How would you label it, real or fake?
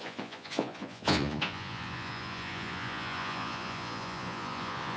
fake